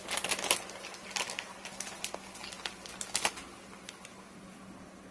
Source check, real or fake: real